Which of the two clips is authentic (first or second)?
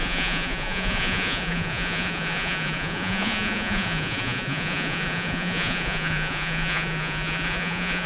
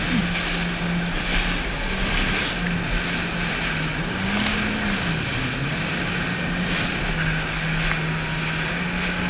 second